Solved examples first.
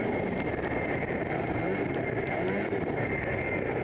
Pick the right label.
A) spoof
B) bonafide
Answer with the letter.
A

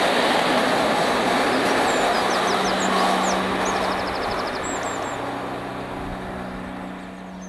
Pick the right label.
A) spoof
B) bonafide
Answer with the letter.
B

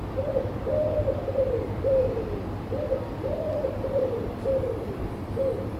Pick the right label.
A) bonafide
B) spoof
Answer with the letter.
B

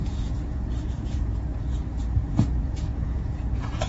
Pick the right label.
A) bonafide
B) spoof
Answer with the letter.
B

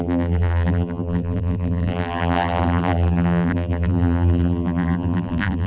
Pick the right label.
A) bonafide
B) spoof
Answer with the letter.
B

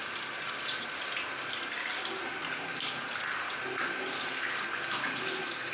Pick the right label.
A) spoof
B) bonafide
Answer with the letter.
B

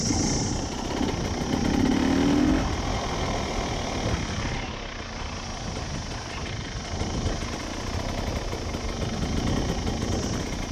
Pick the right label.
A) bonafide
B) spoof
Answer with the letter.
A